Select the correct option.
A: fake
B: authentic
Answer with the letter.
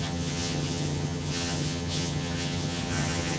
A